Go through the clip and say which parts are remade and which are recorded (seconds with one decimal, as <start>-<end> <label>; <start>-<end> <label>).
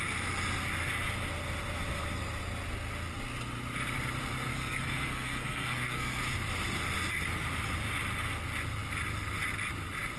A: 0.0-4.5 recorded; 4.5-6.2 remade; 6.2-10.2 recorded